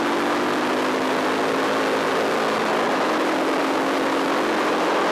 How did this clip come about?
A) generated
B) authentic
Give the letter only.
B